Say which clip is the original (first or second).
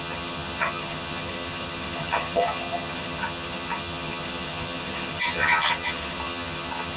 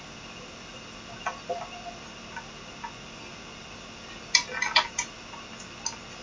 second